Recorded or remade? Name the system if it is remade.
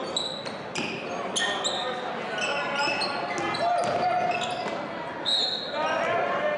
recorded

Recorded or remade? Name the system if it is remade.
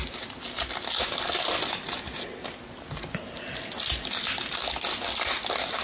recorded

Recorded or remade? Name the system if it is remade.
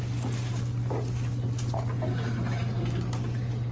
recorded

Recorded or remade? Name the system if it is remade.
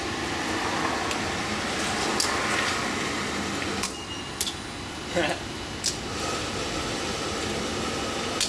recorded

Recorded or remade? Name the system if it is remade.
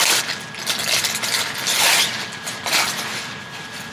recorded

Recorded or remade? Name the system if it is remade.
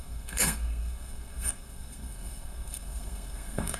remade, codec, SNAC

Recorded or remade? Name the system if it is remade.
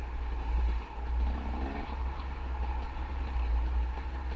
recorded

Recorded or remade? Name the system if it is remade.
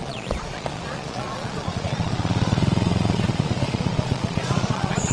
remade, vocoder, Vocos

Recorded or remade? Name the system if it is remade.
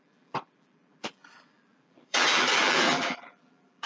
remade, vocoder, BigVGAN v2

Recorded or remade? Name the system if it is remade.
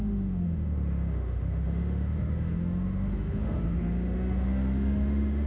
remade, autoencoder, DAC-VAE